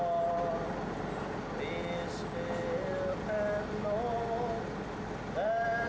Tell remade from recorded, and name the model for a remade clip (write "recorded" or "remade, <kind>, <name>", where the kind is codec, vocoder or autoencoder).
recorded